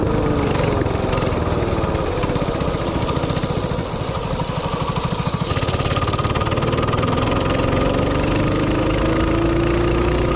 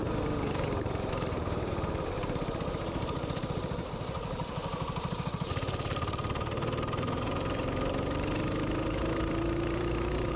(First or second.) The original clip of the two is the first